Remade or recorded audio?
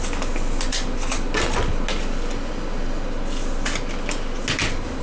recorded